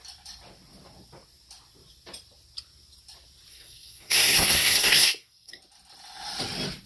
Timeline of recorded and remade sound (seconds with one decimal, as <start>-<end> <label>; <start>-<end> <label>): 0.0-3.5 recorded; 3.5-5.6 remade; 5.6-6.9 recorded